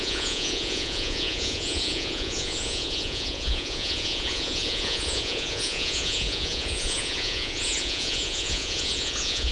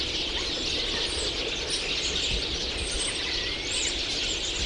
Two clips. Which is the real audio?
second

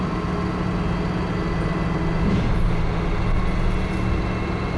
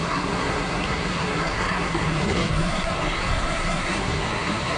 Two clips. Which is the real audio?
first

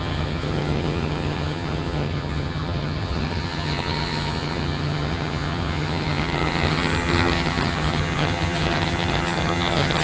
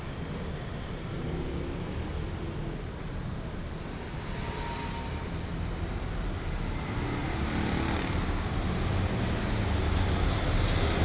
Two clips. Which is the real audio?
second